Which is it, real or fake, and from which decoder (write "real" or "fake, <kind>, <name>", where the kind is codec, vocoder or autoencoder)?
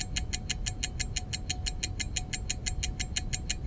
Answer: real